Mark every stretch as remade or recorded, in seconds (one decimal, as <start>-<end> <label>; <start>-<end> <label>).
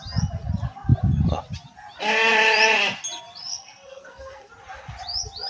0.0-3.5 recorded; 3.5-4.5 remade; 4.5-5.5 recorded